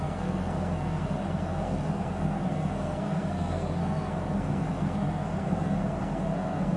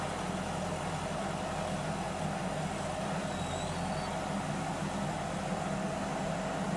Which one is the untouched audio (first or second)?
second